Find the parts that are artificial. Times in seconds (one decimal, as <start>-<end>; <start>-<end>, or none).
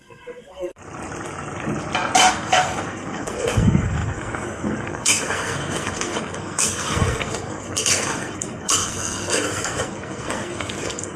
0.0-0.8; 2.3-11.2